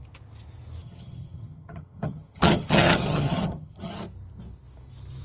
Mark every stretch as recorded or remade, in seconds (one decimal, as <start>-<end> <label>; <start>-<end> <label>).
0.0-0.8 recorded; 0.8-3.9 remade; 3.9-5.2 recorded